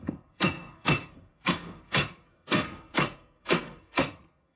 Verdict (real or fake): fake